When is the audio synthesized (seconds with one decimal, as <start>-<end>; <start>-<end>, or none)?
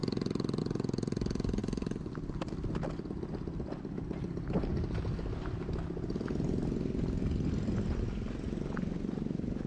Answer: none